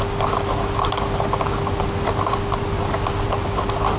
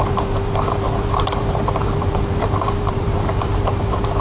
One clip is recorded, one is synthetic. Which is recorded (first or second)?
first